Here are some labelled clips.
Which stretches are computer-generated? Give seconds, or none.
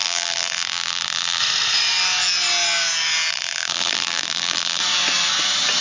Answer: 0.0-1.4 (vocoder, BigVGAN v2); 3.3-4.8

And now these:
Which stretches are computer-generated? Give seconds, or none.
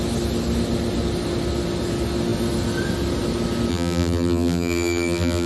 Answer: 3.7-5.5 (vocoder, BigVGAN v2)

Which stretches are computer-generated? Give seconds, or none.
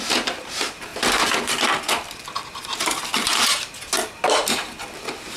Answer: 0.0-0.9 (vocoder, BigVGAN v2); 2.5-3.1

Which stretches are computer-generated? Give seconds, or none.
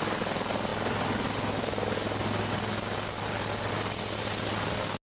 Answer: none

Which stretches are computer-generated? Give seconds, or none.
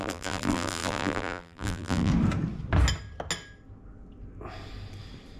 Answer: 0.0-2.1 (vocoder, BigVGAN v2)